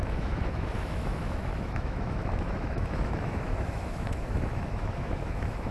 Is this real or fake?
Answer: fake